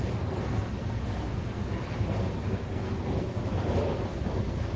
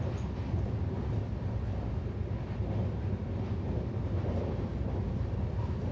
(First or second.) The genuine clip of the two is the second